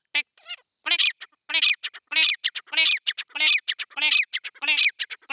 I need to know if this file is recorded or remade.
recorded